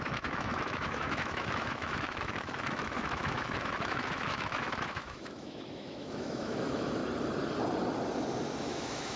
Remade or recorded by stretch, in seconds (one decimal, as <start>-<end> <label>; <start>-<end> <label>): 0.0-7.0 remade; 7.0-8.6 recorded; 8.6-9.2 remade